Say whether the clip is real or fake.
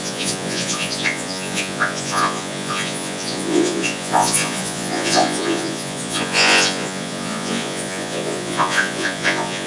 fake